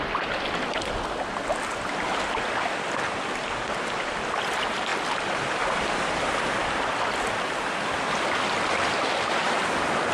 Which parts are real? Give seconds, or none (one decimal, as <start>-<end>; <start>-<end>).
0.0-10.1